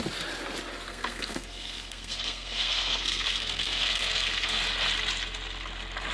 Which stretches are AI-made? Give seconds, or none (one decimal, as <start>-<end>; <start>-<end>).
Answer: 0.9-4.6